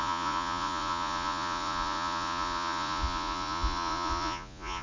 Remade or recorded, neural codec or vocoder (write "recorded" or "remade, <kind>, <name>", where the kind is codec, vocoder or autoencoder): remade, vocoder, Vocos